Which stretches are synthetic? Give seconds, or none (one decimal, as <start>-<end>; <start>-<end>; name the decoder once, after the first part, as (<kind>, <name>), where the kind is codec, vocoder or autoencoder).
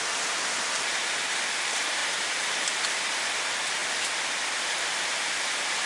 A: 2.0-3.2 (vocoder, BigVGAN v2); 3.8-5.0